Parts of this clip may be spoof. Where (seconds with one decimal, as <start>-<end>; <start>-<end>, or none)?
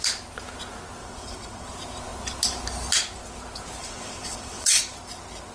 1.0-1.7; 3.8-4.8